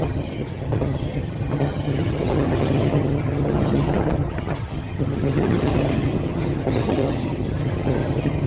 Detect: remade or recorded remade